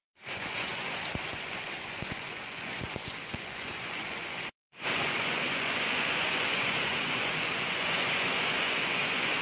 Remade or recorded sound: remade